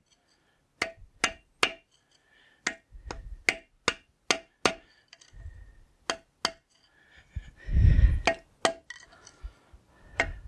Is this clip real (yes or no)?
yes